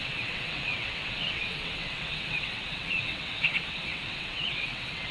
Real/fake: fake